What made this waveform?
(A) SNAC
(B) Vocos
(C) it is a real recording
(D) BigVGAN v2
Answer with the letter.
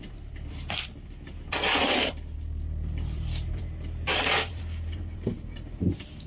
D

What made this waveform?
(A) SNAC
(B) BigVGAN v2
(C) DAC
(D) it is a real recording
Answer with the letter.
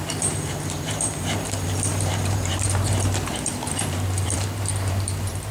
B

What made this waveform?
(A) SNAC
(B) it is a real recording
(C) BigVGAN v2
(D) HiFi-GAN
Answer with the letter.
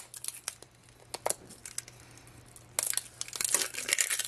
B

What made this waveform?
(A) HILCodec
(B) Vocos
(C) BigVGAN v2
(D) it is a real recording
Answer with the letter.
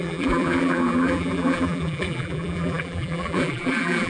C